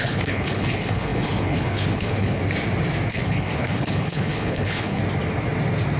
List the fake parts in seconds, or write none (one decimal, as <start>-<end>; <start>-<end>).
0.0-2.4; 3.1-5.0